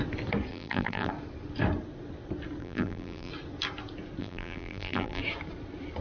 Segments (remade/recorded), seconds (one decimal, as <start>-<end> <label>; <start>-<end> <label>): 0.0-0.5 recorded; 0.5-1.1 remade; 1.1-2.6 recorded; 2.6-3.3 remade; 3.3-4.2 recorded; 4.2-5.2 remade; 5.2-6.0 recorded

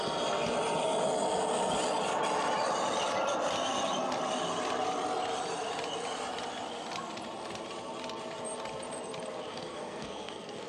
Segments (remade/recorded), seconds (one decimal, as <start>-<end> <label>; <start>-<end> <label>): 0.0-9.5 recorded; 9.5-10.7 remade

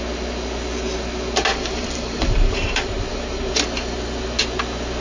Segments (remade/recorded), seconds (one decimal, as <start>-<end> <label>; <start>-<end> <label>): 0.0-1.5 recorded; 1.5-3.5 remade; 3.5-5.0 recorded

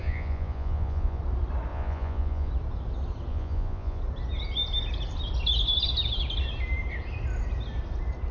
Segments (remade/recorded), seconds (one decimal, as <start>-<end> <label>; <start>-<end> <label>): 0.0-1.2 remade; 1.2-1.7 recorded; 1.7-2.5 remade; 2.5-3.3 recorded; 3.3-4.0 remade; 4.0-8.3 recorded

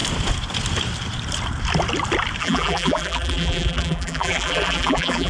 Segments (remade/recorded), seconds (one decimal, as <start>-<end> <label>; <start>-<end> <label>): 0.0-2.4 recorded; 2.4-5.3 remade